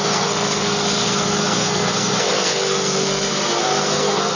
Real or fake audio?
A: fake